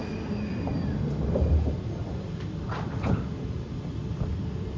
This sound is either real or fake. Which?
fake